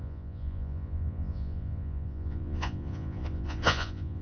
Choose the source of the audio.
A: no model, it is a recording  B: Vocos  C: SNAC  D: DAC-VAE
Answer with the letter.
B